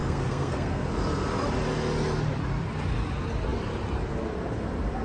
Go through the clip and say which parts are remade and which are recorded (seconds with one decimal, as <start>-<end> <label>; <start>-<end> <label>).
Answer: 0.0-0.9 remade; 0.9-5.0 recorded